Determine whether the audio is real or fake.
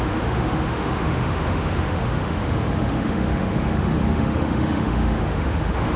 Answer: fake